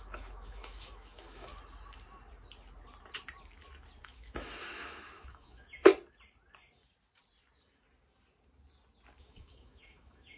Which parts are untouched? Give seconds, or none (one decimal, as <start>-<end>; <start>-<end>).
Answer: 1.5-4.0; 5.9-9.2